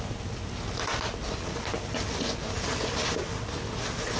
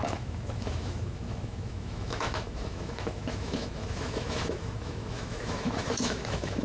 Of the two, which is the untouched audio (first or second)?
first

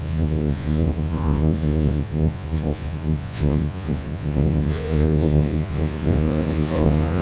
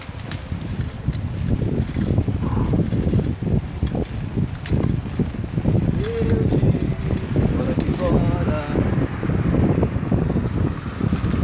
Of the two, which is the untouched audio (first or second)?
second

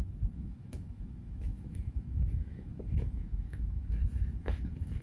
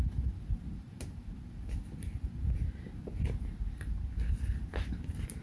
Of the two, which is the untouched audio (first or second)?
second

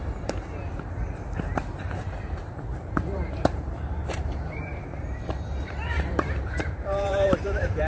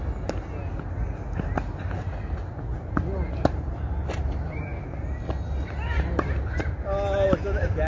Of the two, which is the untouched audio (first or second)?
second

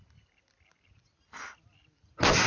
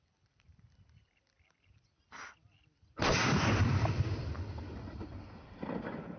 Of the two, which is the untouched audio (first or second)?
first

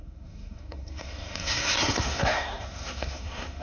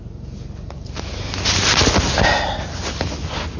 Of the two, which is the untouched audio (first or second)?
second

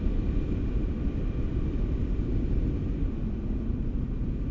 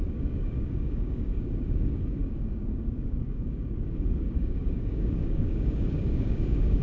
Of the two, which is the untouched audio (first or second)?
first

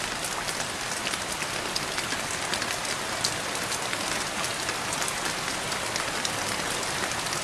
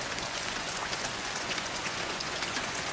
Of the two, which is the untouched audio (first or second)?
first